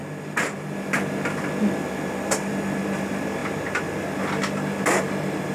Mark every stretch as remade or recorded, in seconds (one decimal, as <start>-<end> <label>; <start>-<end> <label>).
0.0-5.5 recorded

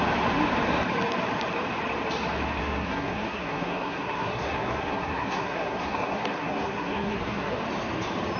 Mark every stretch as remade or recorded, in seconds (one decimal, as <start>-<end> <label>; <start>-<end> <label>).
0.0-2.6 recorded; 2.6-7.6 remade; 7.6-8.4 recorded

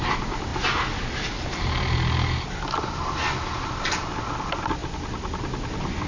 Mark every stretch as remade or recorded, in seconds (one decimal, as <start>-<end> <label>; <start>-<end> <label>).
0.0-6.1 recorded